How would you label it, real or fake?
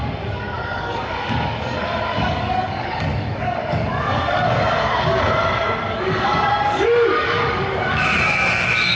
fake